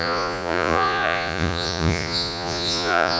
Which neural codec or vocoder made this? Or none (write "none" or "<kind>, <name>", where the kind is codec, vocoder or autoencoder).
vocoder, Vocos